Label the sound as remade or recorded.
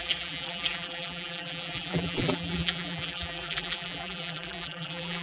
remade